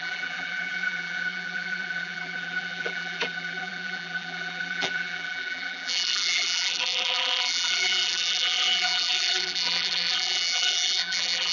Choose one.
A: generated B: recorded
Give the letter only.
A